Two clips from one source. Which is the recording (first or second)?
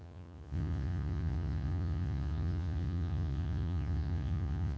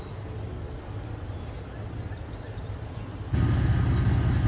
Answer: second